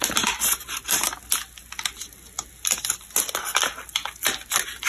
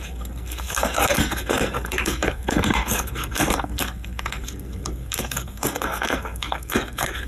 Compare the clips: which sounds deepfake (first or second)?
second